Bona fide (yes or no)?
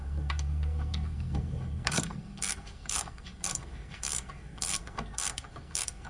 no